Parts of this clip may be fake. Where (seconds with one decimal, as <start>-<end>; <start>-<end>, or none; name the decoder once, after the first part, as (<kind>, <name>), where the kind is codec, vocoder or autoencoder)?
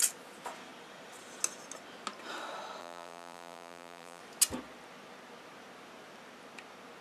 2.8-4.2 (vocoder, BigVGAN v2)